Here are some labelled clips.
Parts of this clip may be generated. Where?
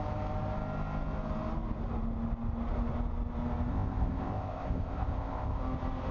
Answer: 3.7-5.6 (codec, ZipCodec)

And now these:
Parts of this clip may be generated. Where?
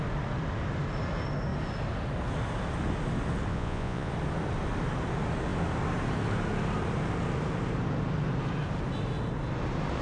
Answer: 3.5-4.1 (vocoder, Vocos)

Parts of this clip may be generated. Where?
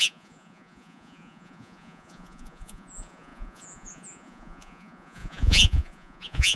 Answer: 0.0-6.6 (vocoder, Vocos)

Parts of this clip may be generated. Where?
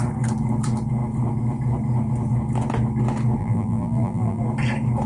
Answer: 3.4-4.4 (vocoder, BigVGAN v2)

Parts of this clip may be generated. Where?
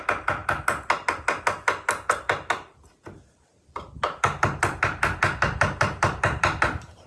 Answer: 3.5-7.1 (vocoder, BigVGAN v2)